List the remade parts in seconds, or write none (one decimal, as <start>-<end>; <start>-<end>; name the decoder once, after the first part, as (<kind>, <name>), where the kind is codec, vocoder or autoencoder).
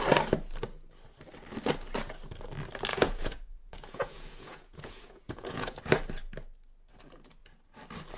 2.9-5.8 (vocoder, Vocos)